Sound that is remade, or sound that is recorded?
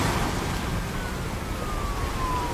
recorded